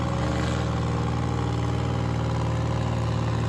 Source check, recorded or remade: recorded